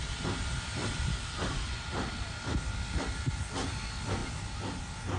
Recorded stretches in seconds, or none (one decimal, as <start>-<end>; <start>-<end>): 0.0-5.2